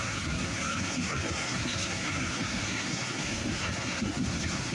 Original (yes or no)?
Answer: no